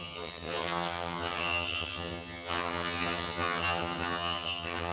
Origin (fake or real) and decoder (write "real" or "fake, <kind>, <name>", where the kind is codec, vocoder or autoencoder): fake, vocoder, HiFi-GAN